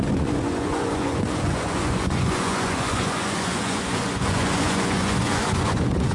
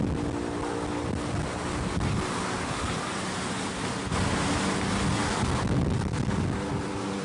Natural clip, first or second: second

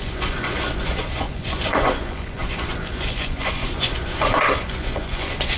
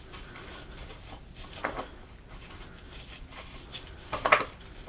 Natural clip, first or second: second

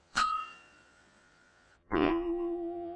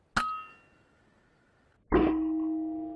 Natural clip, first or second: second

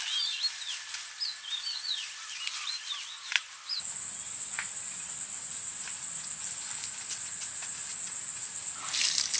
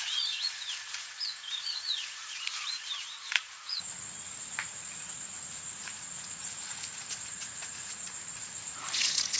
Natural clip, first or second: first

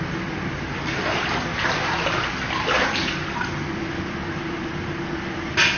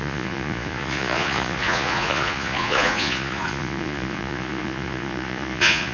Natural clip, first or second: first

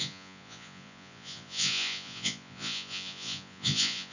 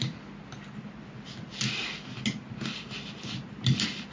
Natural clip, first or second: second